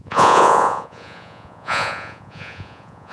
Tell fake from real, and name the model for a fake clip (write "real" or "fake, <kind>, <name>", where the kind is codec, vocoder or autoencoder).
fake, vocoder, Vocos